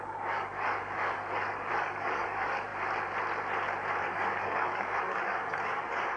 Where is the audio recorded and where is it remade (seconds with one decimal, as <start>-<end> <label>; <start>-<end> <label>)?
0.0-2.7 remade; 2.7-4.0 recorded; 4.0-6.2 remade